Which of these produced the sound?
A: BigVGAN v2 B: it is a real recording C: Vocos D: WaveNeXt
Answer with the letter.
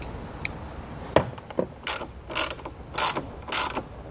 B